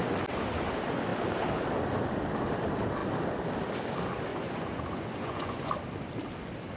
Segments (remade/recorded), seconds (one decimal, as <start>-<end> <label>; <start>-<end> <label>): 0.0-4.3 recorded; 4.3-5.7 remade; 5.7-6.8 recorded